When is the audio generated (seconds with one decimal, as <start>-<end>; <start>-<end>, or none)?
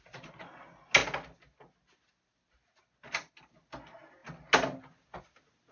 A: none